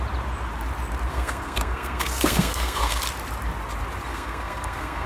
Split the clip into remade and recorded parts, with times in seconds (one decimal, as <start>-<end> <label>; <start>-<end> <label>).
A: 0.0-1.1 recorded; 1.1-3.0 remade; 3.0-4.1 recorded; 4.1-5.1 remade